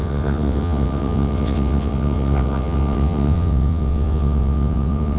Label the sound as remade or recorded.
remade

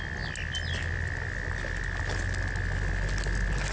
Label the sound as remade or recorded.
recorded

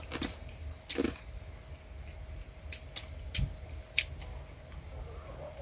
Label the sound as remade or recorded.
recorded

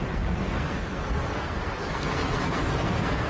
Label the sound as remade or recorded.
remade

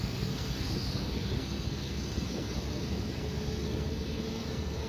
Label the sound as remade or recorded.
remade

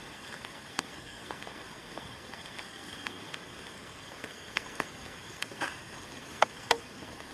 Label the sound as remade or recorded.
remade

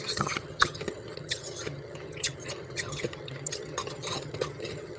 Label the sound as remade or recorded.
remade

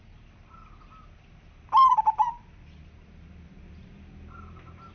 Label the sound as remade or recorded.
recorded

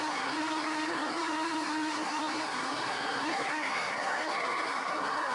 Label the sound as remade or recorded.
remade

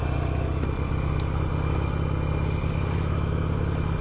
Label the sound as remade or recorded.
recorded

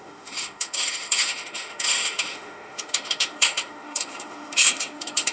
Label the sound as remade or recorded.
remade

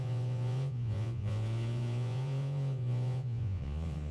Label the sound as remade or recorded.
remade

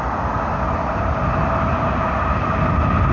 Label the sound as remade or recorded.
recorded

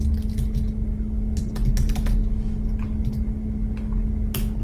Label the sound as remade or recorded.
recorded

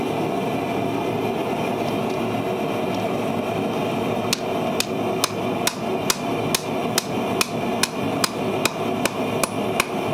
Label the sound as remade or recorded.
recorded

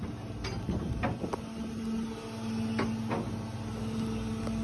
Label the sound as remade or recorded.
recorded